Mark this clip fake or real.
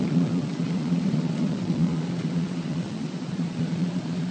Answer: fake